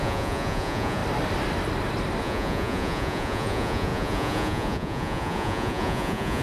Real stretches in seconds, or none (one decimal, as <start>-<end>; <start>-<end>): 1.0-2.2